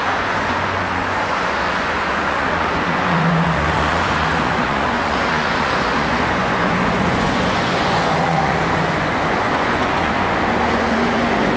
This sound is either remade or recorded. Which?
remade